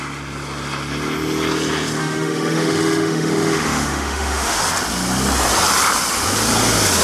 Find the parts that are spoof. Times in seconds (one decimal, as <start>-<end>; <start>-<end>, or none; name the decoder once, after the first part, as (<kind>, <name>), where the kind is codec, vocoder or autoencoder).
2.0-4.6 (autoencoder, DAC-VAE)